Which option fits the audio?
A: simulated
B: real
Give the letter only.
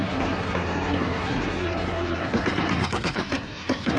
A